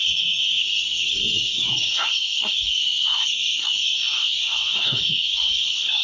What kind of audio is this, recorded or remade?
remade